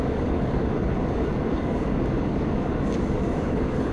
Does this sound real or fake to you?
fake